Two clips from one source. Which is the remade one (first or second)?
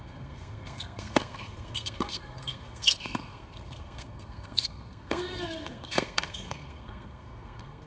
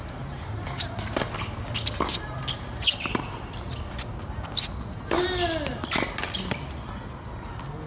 first